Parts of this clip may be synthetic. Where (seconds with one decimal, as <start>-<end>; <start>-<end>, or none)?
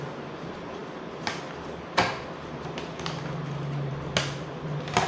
none